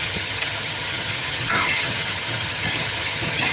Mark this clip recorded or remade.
remade